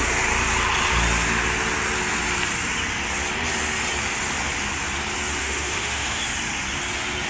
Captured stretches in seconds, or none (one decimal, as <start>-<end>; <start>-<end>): 0.0-5.4; 6.2-7.3